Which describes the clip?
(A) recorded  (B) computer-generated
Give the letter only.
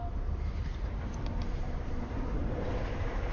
A